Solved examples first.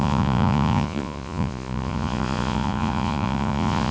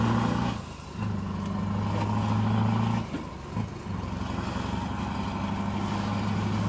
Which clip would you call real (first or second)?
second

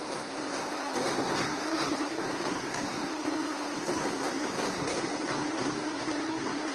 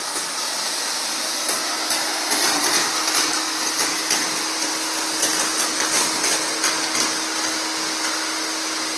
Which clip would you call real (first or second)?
second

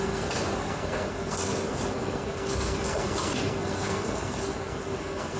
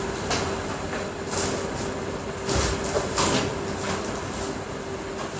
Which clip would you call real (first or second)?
second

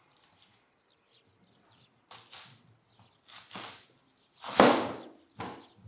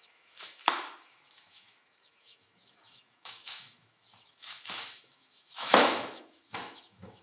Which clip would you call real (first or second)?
first